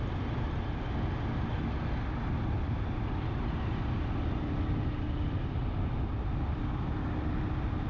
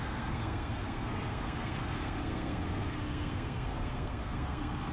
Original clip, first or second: first